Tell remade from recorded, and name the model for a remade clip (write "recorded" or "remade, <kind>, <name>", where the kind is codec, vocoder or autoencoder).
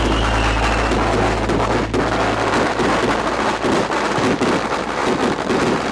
recorded